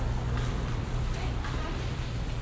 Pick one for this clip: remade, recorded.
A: remade